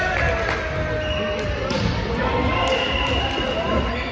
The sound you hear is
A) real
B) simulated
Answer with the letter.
A